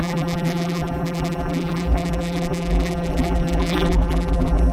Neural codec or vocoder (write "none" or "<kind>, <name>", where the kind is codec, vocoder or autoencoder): vocoder, BigVGAN v2